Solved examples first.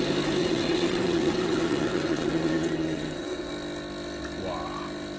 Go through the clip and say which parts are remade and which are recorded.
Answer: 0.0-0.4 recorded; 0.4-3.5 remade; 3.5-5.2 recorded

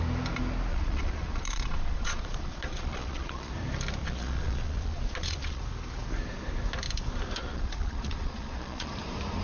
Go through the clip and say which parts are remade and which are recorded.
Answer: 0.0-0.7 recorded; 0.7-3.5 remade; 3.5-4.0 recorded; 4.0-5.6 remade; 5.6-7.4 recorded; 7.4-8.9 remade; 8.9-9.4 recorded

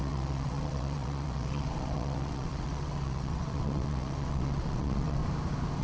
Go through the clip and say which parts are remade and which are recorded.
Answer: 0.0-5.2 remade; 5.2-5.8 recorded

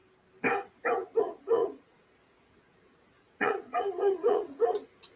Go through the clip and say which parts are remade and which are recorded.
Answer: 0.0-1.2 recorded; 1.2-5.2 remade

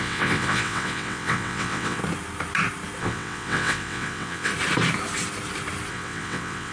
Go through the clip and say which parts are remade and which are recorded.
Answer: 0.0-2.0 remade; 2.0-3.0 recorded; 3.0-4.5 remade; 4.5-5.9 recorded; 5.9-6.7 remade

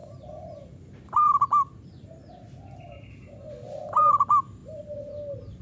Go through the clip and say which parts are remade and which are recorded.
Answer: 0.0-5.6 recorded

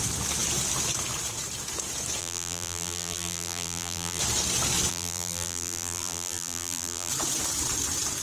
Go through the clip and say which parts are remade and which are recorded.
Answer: 0.0-2.2 recorded; 2.2-4.2 remade; 4.2-4.9 recorded; 4.9-7.1 remade; 7.1-8.2 recorded